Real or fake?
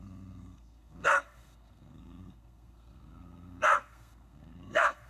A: fake